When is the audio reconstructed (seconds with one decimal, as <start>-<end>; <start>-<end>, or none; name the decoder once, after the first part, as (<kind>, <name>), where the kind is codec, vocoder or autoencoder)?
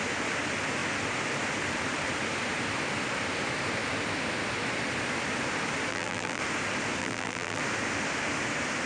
5.9-6.4 (vocoder, BigVGAN v2); 7.0-7.6